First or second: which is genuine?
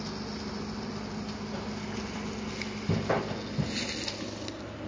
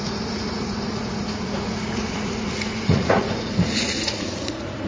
first